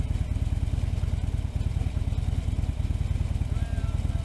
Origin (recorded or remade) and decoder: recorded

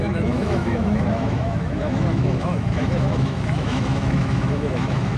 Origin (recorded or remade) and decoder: remade, autoencoder, DAC-VAE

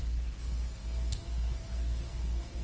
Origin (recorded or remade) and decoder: remade, codec, SNAC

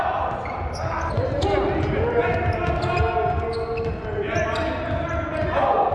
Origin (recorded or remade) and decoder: recorded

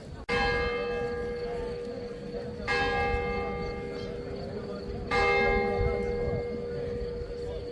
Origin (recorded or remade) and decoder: recorded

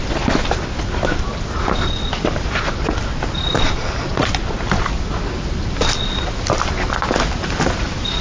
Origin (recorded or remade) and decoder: recorded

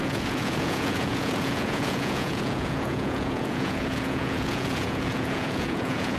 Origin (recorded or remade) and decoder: remade, vocoder, Vocos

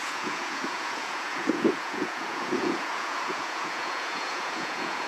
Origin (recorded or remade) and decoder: remade, vocoder, Vocos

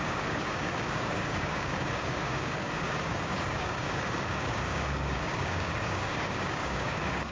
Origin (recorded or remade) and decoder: remade, codec, DAC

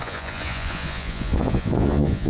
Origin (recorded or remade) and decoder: remade, vocoder, Vocos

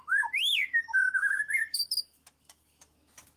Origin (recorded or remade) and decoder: remade, autoencoder, DAC-VAE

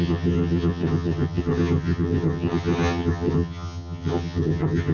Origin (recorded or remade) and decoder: remade, vocoder, HiFi-GAN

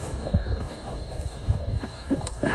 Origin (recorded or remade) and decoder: remade, codec, DAC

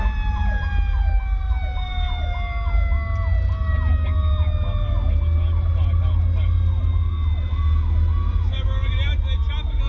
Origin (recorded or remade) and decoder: recorded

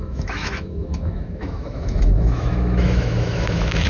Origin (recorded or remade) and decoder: remade, autoencoder, DAC-VAE